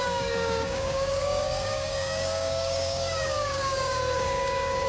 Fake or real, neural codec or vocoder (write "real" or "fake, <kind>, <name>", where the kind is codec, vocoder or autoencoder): fake, codec, DAC